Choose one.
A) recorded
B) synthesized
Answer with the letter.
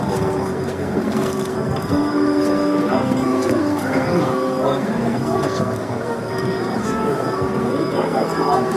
B